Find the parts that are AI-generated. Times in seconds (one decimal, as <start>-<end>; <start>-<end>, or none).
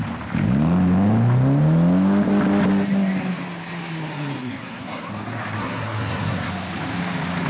4.1-5.1; 5.6-6.5